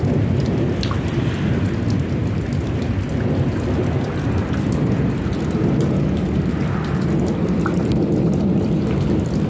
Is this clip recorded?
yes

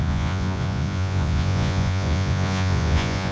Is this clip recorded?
no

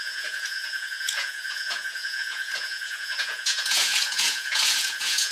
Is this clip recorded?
no